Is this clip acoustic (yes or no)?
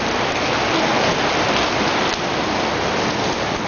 no